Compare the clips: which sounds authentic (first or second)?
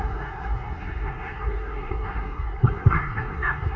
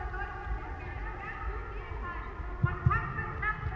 second